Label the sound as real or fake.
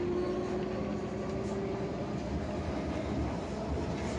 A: real